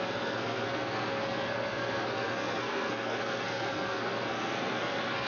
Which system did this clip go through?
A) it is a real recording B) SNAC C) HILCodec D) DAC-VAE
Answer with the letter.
B